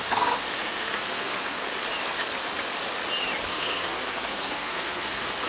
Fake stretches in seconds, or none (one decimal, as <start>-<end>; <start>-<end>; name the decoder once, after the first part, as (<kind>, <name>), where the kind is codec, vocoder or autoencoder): 0.0-1.6 (codec, SNAC); 3.5-5.5